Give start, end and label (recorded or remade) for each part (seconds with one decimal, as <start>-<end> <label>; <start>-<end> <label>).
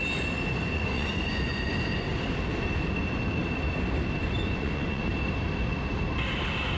0.0-0.6 recorded; 0.6-1.7 remade; 1.7-4.2 recorded; 4.2-5.1 remade; 5.1-6.8 recorded